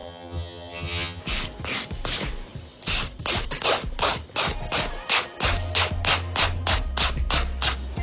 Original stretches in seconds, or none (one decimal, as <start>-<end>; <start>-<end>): 1.2-8.0